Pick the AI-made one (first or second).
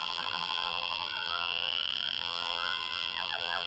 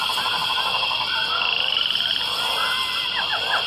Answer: first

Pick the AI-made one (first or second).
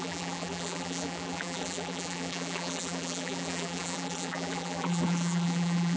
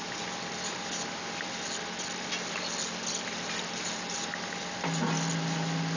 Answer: first